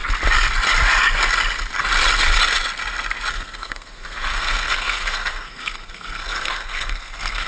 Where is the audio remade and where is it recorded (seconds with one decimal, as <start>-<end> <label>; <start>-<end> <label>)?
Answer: 0.0-3.3 recorded; 3.3-7.5 remade